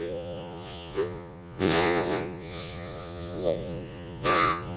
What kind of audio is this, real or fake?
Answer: fake